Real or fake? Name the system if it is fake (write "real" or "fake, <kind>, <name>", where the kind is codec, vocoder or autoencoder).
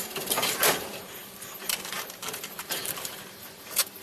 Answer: fake, vocoder, BigVGAN v2